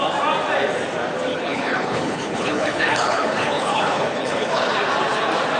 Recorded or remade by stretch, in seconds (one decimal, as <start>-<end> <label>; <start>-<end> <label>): 0.0-1.3 recorded; 1.3-4.7 remade; 4.7-5.6 recorded